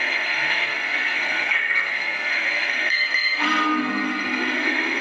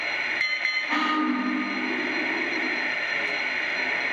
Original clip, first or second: second